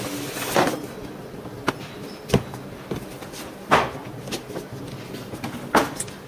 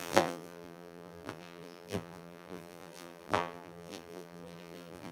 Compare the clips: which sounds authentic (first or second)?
first